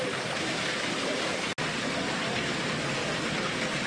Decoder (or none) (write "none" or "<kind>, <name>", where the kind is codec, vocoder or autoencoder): none